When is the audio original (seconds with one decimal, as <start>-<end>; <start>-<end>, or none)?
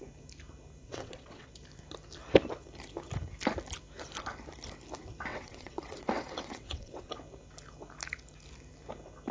0.0-0.8; 1.5-5.3; 7.1-9.3